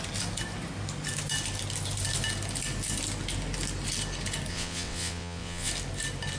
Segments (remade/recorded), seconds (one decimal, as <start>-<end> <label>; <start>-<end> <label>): 0.0-4.5 recorded; 4.5-5.7 remade; 5.7-6.4 recorded